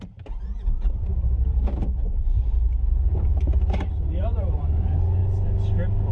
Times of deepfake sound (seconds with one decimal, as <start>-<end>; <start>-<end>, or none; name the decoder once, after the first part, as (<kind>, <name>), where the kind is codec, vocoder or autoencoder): 1.1-4.6 (vocoder, BigVGAN v2)